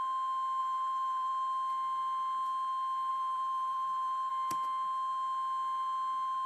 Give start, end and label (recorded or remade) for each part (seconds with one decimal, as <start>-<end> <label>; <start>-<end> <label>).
0.0-0.6 recorded; 0.6-1.3 remade; 1.3-3.1 recorded; 3.1-4.3 remade; 4.3-6.5 recorded